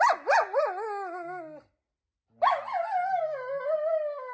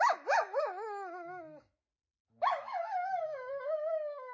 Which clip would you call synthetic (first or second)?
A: second